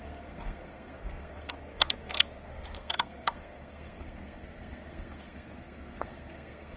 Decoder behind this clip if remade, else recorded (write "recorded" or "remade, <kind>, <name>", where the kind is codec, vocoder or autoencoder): remade, codec, SNAC